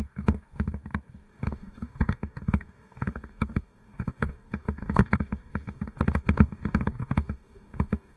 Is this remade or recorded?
remade